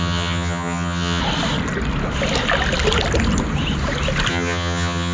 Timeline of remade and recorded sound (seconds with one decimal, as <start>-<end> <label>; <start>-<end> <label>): 0.0-1.2 remade; 1.2-4.3 recorded; 4.3-5.1 remade